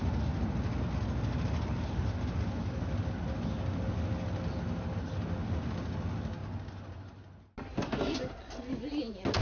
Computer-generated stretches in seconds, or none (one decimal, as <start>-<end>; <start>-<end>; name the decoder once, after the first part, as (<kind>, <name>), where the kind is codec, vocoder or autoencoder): none